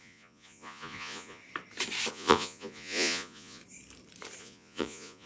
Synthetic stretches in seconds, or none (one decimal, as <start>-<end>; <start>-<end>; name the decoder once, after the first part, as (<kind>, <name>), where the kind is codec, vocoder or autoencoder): 0.0-1.4 (vocoder, Vocos); 2.1-3.6; 4.4-5.3